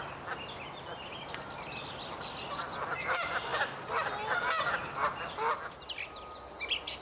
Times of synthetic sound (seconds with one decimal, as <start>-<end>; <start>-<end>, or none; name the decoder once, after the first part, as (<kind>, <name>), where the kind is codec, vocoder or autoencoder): none